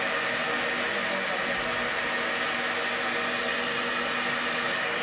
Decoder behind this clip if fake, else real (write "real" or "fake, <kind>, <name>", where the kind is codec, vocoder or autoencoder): real